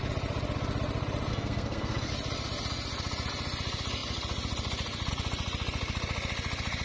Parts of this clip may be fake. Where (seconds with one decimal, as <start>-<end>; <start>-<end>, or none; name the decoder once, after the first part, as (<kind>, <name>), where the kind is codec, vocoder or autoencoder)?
1.3-2.1 (codec, SNAC)

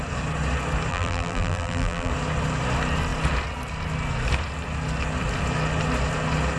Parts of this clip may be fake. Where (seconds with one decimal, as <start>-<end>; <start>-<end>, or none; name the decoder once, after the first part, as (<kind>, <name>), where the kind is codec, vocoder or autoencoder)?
0.9-2.1 (vocoder, BigVGAN v2)

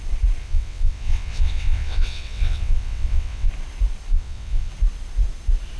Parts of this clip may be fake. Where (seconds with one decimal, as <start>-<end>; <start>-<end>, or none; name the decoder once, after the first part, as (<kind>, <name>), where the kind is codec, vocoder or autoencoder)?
0.4-3.5 (vocoder, WaveNeXt); 4.1-4.7